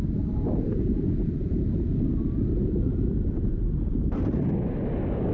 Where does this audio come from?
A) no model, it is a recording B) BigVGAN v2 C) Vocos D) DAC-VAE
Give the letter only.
A